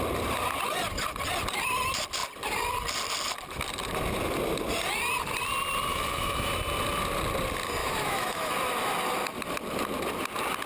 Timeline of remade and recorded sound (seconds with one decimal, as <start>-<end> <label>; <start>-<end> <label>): 0.0-5.9 recorded; 5.9-6.5 remade; 6.5-7.8 recorded; 7.8-8.5 remade; 8.5-10.7 recorded